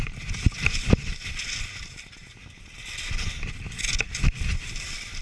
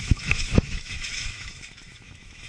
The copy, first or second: second